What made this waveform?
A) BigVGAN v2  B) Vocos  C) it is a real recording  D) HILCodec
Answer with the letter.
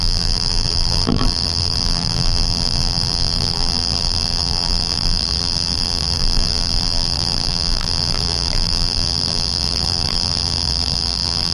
A